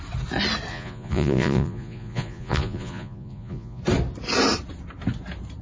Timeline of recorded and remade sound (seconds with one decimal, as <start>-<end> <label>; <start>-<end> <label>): 0.0-0.7 recorded; 0.7-3.8 remade; 3.8-5.6 recorded